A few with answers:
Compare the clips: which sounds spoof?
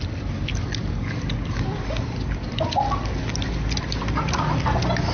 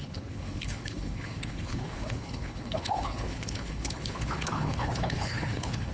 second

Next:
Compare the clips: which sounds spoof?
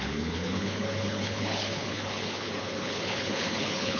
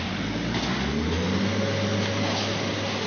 first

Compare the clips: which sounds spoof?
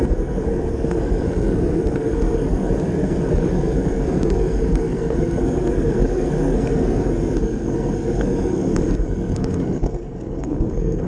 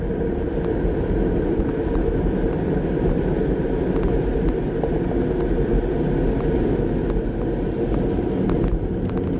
first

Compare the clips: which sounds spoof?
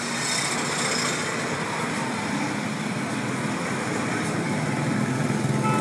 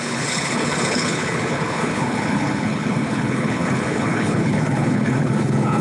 second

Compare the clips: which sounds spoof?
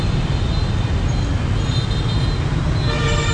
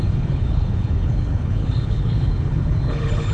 second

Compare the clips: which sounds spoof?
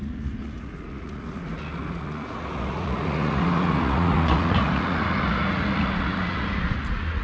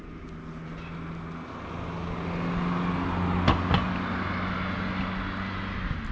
first